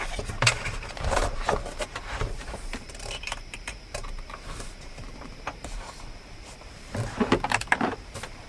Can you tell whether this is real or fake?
fake